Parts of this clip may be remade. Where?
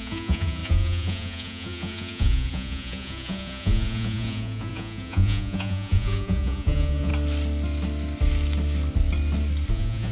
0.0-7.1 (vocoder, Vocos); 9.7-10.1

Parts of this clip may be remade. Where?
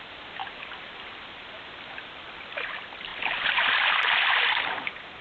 none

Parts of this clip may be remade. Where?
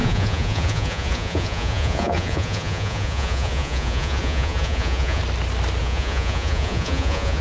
0.0-5.2 (vocoder, Vocos); 5.8-7.4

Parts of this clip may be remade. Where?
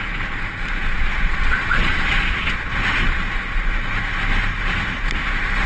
0.9-2.7 (vocoder, Vocos)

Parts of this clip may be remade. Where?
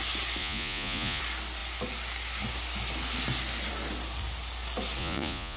0.4-1.2 (vocoder, Vocos); 5.0-5.6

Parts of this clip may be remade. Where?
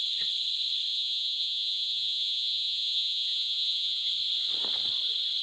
0.9-4.1 (vocoder, Vocos)